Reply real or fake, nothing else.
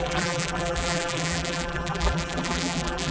fake